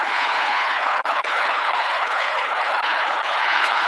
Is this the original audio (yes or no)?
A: no